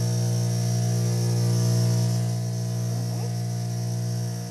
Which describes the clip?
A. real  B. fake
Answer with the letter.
A